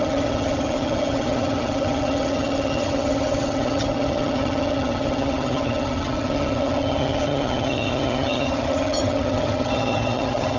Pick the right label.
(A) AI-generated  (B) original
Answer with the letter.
A